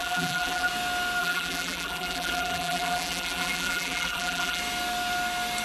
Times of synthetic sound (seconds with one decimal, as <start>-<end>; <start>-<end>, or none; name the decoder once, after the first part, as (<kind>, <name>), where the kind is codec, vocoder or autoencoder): 0.0-0.7 (vocoder, BigVGAN v2); 1.2-4.6